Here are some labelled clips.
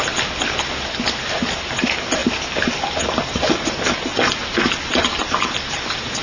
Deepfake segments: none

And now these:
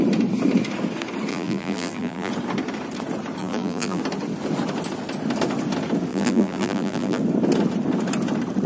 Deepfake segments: 1.3-2.3; 3.4-4.0; 6.1-7.2

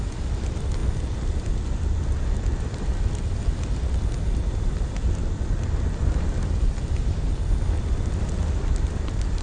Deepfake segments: 0.0-9.4

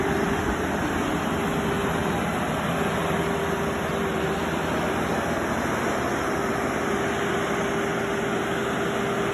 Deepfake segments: none